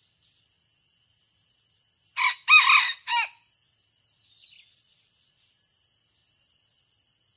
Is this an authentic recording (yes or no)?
yes